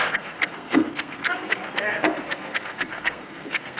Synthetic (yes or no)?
yes